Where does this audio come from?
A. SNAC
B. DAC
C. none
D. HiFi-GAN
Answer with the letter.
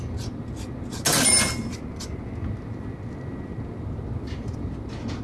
C